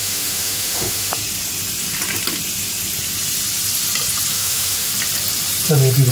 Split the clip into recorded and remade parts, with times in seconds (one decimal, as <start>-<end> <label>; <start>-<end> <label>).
0.0-1.2 remade; 1.2-4.3 recorded; 4.3-4.9 remade; 4.9-6.1 recorded